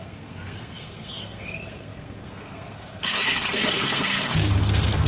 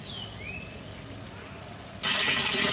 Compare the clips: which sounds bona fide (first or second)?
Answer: second